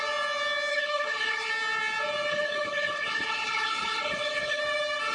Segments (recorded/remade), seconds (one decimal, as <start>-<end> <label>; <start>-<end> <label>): 0.0-0.7 recorded; 0.7-1.5 remade; 1.5-2.3 recorded; 2.3-4.6 remade; 4.6-5.1 recorded